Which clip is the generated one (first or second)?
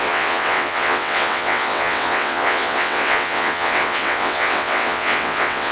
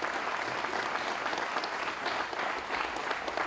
first